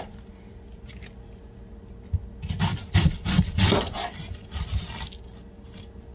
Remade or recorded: recorded